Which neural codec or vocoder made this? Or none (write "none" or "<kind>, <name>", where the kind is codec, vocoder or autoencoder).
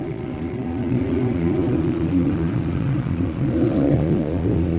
vocoder, Vocos